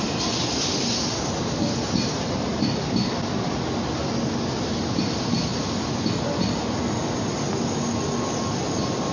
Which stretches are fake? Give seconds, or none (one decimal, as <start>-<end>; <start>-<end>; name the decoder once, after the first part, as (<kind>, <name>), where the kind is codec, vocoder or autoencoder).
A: none